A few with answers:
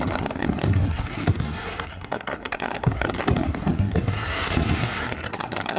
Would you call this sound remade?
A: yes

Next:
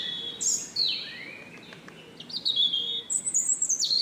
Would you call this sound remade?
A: no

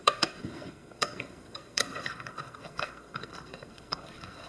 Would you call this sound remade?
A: yes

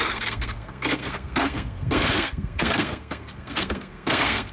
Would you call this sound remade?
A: yes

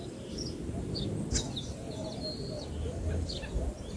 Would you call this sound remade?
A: no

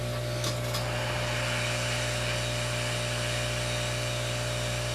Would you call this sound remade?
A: no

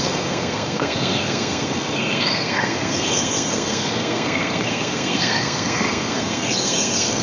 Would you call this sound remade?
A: yes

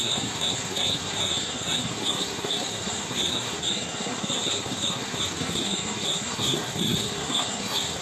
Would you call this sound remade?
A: yes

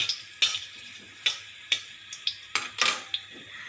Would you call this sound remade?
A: no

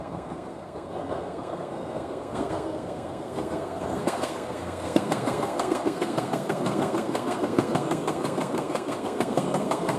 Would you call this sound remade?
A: yes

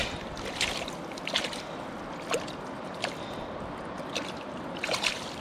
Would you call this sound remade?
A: no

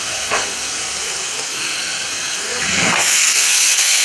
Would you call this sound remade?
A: yes